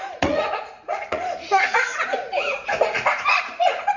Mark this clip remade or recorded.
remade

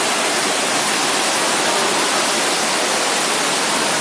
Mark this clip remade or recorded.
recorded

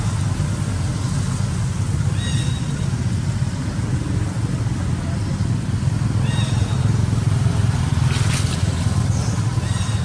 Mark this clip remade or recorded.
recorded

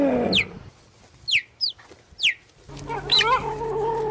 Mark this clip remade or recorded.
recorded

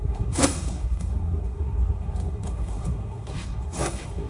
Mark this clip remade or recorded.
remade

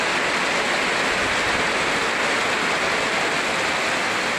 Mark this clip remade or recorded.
recorded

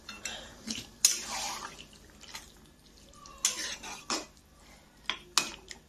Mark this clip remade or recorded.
recorded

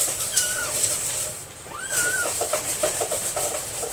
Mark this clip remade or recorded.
remade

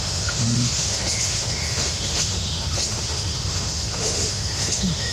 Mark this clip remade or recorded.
remade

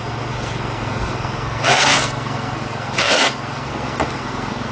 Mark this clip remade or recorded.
remade